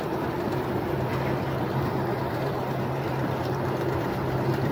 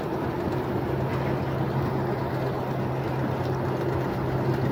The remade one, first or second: first